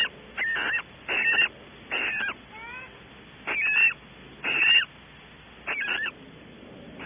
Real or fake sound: real